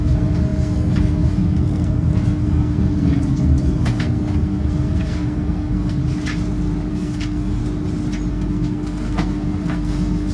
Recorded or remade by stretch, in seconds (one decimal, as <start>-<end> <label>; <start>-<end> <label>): 0.0-6.0 remade; 6.0-6.9 recorded; 6.9-7.6 remade; 7.6-8.3 recorded; 8.3-10.3 remade